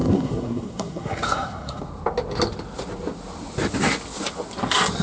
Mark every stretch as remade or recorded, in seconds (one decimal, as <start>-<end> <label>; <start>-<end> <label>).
0.0-1.8 remade; 1.8-5.0 recorded